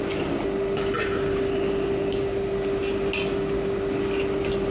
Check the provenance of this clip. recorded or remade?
recorded